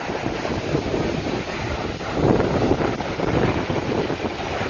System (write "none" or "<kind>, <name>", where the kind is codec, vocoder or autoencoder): none